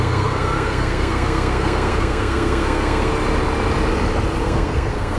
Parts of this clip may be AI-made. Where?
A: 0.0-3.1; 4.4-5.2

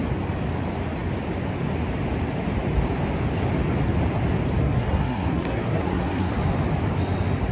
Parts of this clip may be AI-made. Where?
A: 4.6-6.3

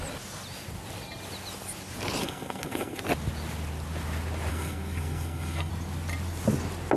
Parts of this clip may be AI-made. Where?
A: 2.2-3.0; 4.5-5.7

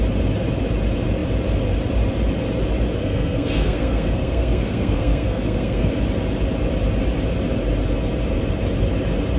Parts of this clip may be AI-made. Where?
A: 3.0-5.9

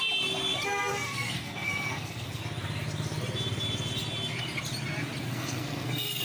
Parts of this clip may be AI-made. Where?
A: 0.9-2.4; 5.2-6.2

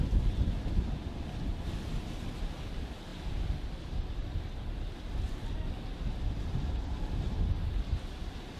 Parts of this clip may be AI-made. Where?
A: none

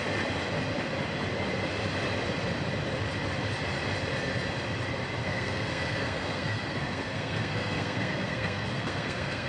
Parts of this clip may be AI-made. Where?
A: 5.2-9.5

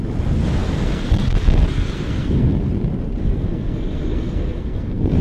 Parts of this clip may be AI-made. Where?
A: 0.6-2.7; 3.2-5.2